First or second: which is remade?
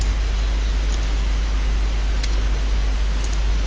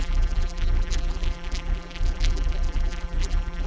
second